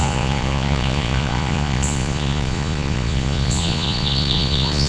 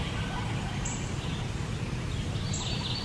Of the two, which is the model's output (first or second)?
first